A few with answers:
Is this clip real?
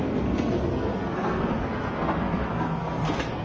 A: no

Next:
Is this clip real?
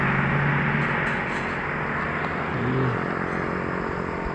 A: yes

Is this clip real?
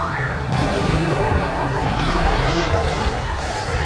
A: no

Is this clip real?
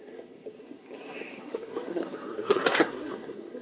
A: no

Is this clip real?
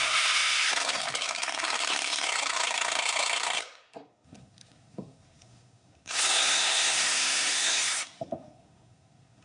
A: no